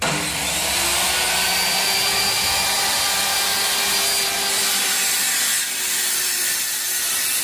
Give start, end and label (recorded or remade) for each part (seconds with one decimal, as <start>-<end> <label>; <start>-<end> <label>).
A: 0.0-0.9 remade; 0.9-1.8 recorded; 1.8-3.5 remade; 3.5-4.7 recorded; 4.7-7.4 remade